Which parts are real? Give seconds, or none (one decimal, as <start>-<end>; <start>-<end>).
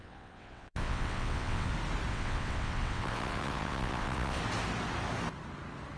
1.7-2.1; 4.4-6.0